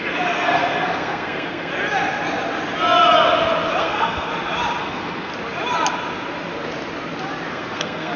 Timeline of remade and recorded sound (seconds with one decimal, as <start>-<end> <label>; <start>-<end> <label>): 0.0-1.7 remade; 1.7-3.8 recorded; 3.8-4.3 remade; 4.3-4.8 recorded; 4.8-5.3 remade; 5.3-7.5 recorded; 7.5-8.2 remade